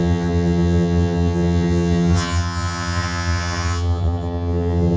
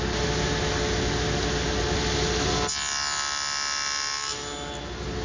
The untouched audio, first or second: second